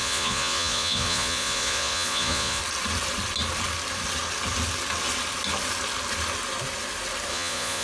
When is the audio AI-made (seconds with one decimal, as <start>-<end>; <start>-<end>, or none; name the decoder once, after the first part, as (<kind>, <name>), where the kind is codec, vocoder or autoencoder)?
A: 0.0-2.6 (vocoder, Vocos); 7.3-7.8